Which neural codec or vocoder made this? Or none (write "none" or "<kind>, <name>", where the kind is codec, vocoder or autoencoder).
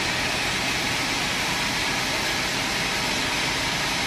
none